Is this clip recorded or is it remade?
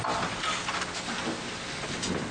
recorded